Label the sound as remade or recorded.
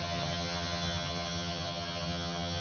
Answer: remade